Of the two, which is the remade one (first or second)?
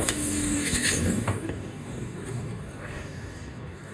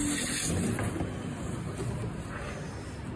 first